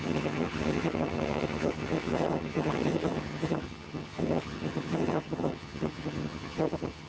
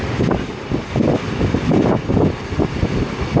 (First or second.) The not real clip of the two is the first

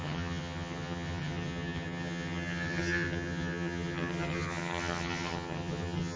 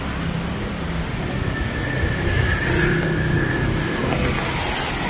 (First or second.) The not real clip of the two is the first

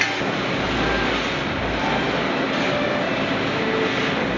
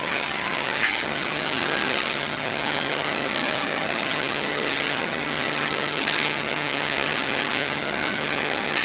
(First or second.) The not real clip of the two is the second